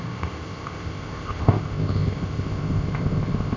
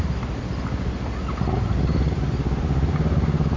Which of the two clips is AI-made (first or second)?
first